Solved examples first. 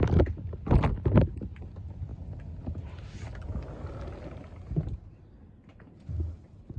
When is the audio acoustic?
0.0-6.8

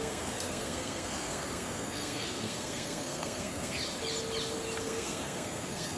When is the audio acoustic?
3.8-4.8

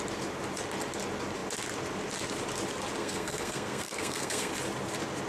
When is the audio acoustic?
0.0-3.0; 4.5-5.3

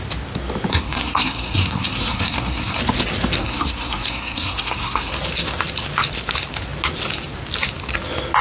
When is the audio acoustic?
0.0-0.7; 2.8-3.4; 5.1-8.4

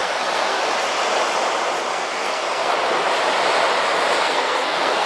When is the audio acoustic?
0.6-1.9; 2.7-4.2

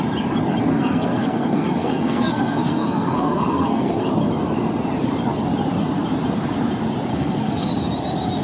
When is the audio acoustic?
0.0-0.7; 4.1-7.1; 7.7-8.4

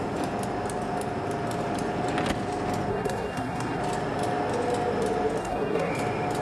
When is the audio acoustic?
0.0-2.9; 3.8-5.4; 5.9-6.4